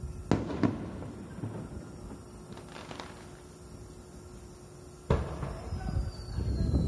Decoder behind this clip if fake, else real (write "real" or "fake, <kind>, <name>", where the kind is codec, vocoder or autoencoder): real